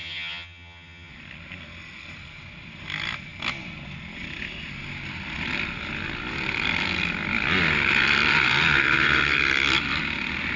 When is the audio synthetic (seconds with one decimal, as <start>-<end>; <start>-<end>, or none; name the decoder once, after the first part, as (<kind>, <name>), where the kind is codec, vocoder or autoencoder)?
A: 0.0-1.1 (vocoder, HiFi-GAN)